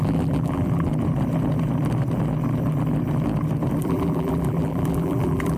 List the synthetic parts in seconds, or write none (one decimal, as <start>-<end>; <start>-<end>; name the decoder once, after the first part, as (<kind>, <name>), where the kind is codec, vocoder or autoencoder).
0.0-0.9 (vocoder, BigVGAN v2); 3.8-5.6